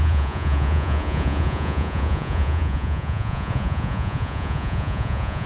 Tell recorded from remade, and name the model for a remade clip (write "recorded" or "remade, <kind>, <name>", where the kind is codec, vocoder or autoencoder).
remade, vocoder, Vocos